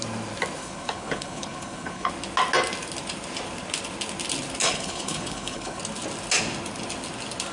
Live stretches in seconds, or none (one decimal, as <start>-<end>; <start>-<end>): 0.0-0.6; 2.1-4.6; 5.8-7.5